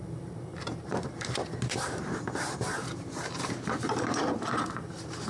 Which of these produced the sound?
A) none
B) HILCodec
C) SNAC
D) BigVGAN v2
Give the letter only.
D